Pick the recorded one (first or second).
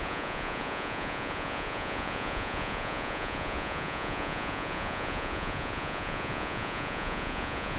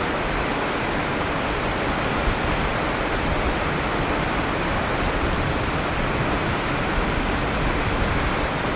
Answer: second